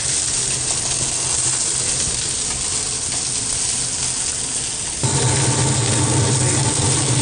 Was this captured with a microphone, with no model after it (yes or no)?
yes